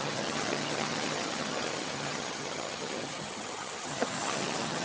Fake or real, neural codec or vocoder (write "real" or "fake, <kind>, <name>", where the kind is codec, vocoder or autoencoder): fake, vocoder, HiFi-GAN